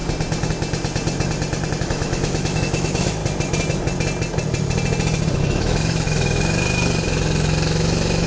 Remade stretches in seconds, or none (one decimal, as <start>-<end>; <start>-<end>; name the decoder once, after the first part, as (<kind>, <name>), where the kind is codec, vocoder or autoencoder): 1.8-3.2 (autoencoder, DAC-VAE); 5.4-8.3